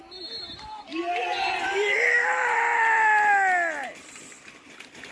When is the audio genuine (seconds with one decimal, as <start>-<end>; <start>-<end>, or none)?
0.0-0.9; 2.1-5.1